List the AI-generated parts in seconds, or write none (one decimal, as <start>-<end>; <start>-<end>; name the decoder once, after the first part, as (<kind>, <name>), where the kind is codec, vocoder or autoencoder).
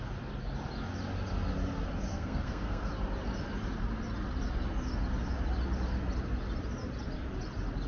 2.1-2.9 (codec, SNAC)